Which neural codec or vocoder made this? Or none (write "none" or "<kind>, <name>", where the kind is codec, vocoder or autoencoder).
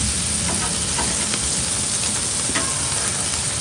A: none